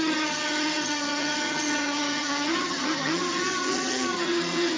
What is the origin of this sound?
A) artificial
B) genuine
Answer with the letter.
A